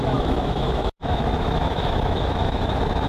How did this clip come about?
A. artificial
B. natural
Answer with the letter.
A